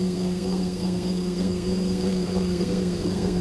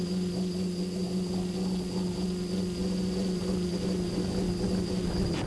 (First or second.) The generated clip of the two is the first